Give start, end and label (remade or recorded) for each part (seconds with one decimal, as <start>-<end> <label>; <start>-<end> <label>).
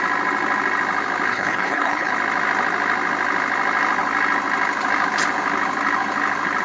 0.0-1.3 recorded; 1.3-2.1 remade; 2.1-6.6 recorded